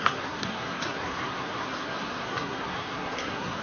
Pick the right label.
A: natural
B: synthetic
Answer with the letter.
B